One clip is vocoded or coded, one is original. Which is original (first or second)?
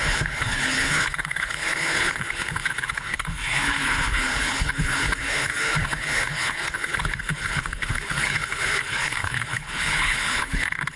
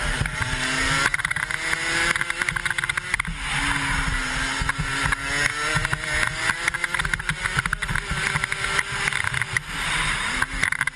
second